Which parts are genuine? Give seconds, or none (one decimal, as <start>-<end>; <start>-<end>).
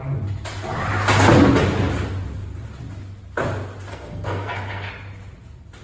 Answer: 0.0-3.9; 4.9-5.8